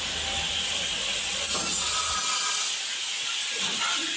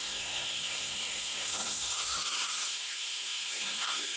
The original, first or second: first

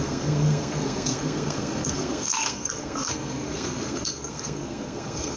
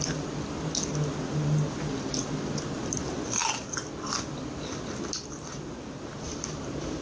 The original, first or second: second